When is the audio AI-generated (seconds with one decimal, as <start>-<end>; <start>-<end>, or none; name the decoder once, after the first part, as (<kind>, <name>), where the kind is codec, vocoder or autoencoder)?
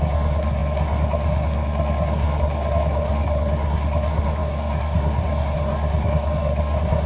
0.0-7.1 (codec, SNAC)